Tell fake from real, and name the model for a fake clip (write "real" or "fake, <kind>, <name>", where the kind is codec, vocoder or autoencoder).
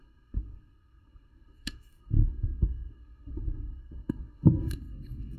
fake, codec, SNAC